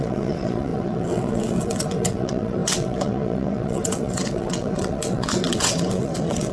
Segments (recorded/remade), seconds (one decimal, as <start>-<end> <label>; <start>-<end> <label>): 0.0-6.5 remade